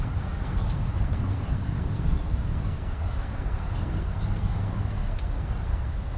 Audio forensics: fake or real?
fake